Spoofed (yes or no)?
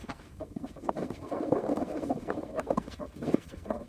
yes